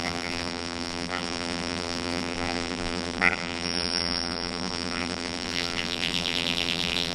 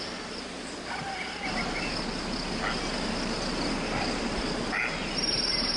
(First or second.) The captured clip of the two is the second